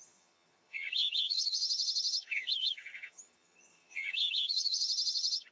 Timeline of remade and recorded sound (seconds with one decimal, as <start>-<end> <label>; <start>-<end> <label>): 0.0-5.5 remade